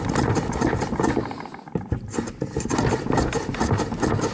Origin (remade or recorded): recorded